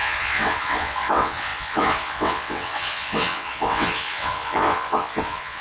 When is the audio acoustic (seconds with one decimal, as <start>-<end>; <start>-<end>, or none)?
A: none

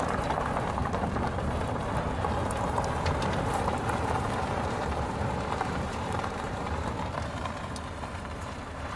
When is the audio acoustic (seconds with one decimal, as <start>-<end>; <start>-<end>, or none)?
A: 0.8-1.4

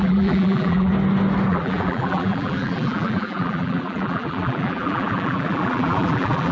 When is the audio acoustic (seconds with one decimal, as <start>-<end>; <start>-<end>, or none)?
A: 0.9-1.5

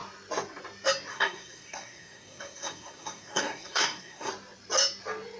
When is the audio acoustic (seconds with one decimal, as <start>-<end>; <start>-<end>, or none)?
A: 0.0-1.1; 4.3-5.4

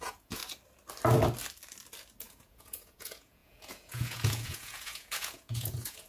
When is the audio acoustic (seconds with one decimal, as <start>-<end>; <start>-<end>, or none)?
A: 0.4-2.2

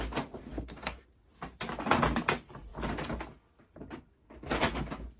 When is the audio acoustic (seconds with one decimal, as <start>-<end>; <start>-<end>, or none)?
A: 0.0-0.5; 1.0-5.2